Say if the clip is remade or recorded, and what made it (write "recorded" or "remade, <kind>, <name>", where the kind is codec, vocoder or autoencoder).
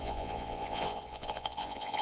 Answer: remade, vocoder, Vocos